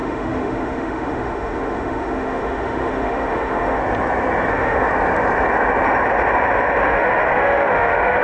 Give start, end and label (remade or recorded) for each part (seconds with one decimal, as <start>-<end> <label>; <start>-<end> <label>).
0.0-3.8 remade; 3.8-4.5 recorded; 4.5-4.9 remade; 4.9-6.8 recorded; 6.8-8.2 remade